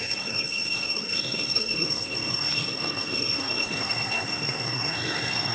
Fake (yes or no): yes